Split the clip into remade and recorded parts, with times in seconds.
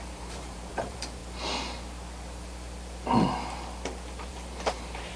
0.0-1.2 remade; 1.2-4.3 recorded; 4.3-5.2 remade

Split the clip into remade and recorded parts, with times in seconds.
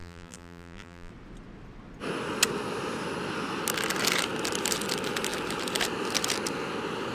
0.0-1.1 remade; 1.1-7.1 recorded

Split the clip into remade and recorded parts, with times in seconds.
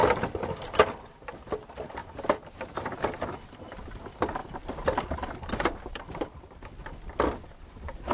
0.0-2.0 recorded; 2.0-3.2 remade; 3.2-8.1 recorded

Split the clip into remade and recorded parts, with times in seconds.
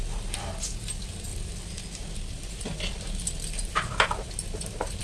0.0-1.3 recorded; 1.3-4.3 remade; 4.3-5.0 recorded